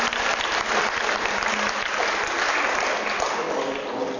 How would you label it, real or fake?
real